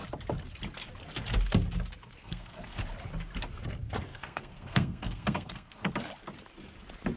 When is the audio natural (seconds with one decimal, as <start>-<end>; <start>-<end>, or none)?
0.0-2.2; 2.8-4.1; 5.9-7.2